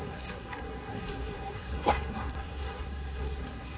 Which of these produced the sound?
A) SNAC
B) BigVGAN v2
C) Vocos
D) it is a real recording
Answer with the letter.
A